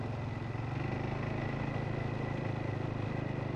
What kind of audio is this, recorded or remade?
recorded